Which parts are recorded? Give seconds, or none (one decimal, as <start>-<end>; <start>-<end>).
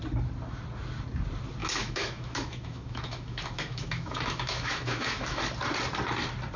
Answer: 0.0-1.6; 5.4-6.6